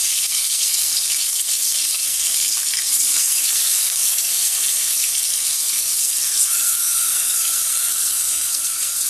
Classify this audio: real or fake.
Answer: fake